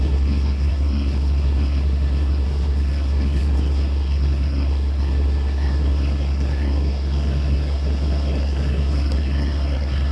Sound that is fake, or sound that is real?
fake